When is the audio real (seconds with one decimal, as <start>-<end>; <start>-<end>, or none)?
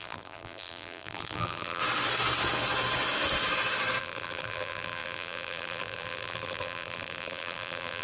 1.8-4.0